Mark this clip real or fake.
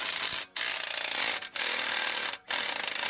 real